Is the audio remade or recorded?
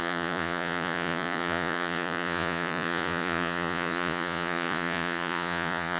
remade